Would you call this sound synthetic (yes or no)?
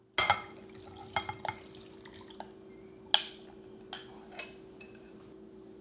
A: no